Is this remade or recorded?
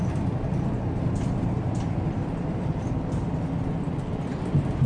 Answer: remade